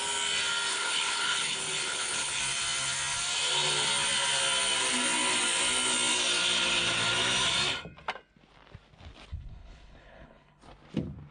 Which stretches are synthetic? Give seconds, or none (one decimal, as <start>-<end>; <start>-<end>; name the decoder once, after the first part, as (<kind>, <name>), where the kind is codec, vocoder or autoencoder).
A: 0.7-2.4 (codec, HILCodec); 9.3-10.6